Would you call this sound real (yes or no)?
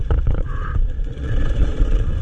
no